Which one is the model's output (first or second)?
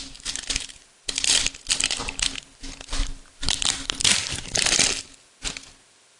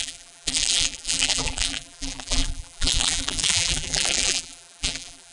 second